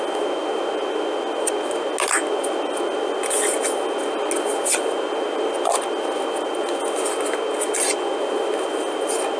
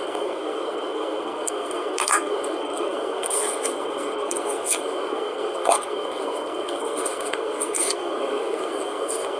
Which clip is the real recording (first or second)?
first